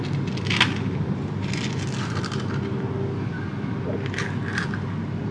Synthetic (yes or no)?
no